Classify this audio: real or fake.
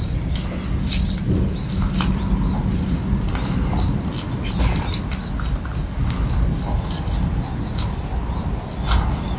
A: real